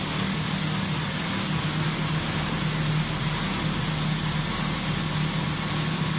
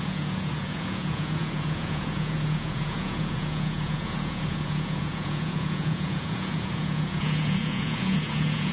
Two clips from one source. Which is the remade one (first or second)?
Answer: second